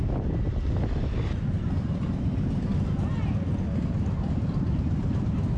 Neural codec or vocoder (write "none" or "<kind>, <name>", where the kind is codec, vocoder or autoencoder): none